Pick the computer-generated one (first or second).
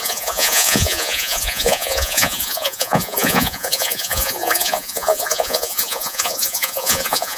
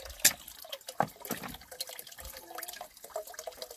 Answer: first